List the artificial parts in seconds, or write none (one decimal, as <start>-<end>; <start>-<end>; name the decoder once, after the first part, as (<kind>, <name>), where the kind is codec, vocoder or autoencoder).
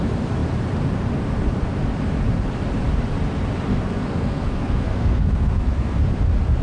3.7-6.0 (codec, SNAC)